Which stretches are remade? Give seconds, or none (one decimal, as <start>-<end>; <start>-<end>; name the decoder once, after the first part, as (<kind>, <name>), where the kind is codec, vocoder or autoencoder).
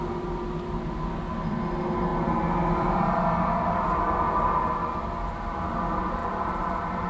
6.2-7.1 (vocoder, BigVGAN v2)